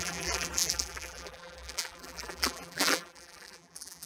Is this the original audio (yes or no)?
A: no